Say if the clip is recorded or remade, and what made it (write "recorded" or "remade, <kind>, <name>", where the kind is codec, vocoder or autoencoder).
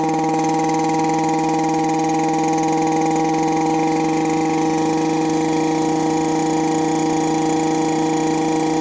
recorded